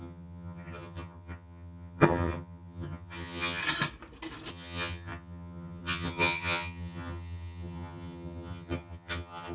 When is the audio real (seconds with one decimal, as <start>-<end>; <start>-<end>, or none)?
3.6-4.5